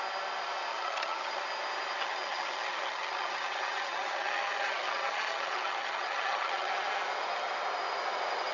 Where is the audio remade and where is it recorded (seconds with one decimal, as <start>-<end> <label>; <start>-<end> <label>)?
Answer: 0.0-0.7 recorded; 0.7-1.4 remade; 1.4-2.0 recorded; 2.0-6.7 remade; 6.7-8.5 recorded